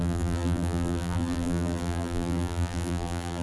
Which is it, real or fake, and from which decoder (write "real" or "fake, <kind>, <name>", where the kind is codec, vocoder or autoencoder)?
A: fake, vocoder, BigVGAN v2